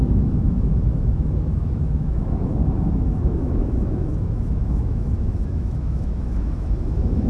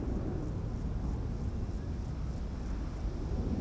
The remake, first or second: first